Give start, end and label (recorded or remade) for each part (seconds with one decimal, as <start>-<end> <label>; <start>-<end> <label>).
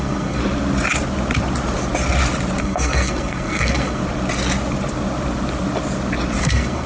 0.0-0.4 remade; 0.4-2.6 recorded; 2.6-4.0 remade; 4.0-6.4 recorded; 6.4-6.9 remade